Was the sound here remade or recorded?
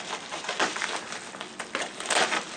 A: recorded